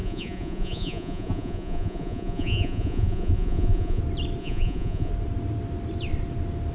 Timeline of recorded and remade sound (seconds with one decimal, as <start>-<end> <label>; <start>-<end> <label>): 0.0-4.0 remade; 4.0-4.4 recorded; 4.4-5.1 remade; 5.1-6.7 recorded